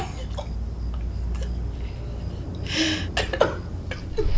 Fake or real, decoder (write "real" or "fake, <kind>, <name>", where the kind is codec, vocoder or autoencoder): real